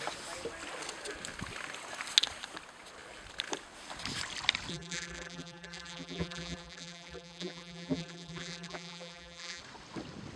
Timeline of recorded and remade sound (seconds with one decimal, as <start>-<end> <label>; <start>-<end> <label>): 0.0-4.7 recorded; 4.7-9.6 remade; 9.6-10.4 recorded

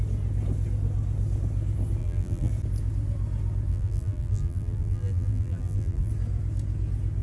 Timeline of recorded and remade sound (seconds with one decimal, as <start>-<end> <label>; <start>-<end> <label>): 0.0-2.0 recorded; 2.0-2.5 remade; 2.5-3.7 recorded; 3.7-6.1 remade; 6.1-7.2 recorded

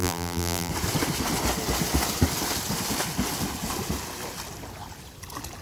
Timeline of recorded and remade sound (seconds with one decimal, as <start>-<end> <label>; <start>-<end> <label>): 0.0-0.7 remade; 0.7-5.6 recorded

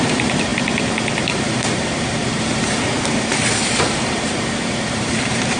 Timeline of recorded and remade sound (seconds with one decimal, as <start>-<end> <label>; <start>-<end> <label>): 0.0-0.5 remade; 0.5-1.3 recorded; 1.3-5.6 remade

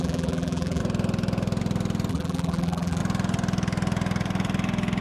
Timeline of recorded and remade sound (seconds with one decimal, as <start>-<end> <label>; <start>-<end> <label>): 0.0-0.8 remade; 0.8-2.1 recorded; 2.1-3.0 remade; 3.0-5.0 recorded

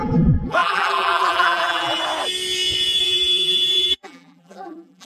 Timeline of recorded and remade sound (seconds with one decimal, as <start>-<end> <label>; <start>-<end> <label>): 0.0-2.0 remade; 2.0-3.0 recorded; 3.0-5.0 remade

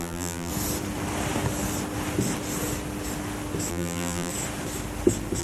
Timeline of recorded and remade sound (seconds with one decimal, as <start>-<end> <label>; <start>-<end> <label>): 0.0-0.5 remade; 0.5-3.7 recorded; 3.7-4.3 remade; 4.3-5.4 recorded